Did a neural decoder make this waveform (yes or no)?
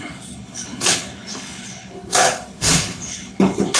yes